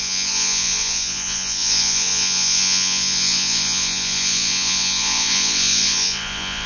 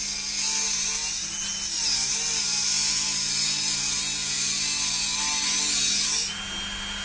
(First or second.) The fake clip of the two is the first